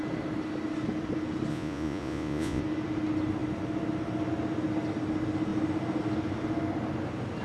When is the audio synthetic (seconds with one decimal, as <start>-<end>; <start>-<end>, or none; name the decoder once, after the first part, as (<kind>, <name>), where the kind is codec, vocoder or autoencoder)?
1.5-2.6 (vocoder, Vocos)